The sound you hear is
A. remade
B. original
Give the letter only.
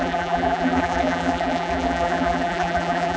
A